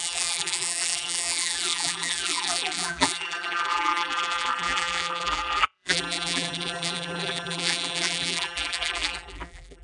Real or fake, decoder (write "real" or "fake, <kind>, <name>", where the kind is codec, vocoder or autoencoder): fake, vocoder, BigVGAN v2